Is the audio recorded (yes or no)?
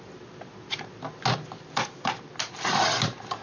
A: yes